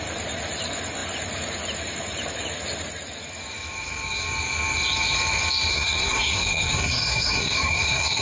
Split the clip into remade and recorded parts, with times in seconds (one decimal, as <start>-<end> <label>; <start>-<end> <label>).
0.0-5.7 recorded; 5.7-8.2 remade